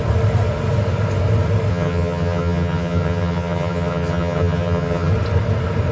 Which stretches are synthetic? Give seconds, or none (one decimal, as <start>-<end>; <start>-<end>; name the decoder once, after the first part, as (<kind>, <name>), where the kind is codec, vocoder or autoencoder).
1.7-5.1 (vocoder, HiFi-GAN)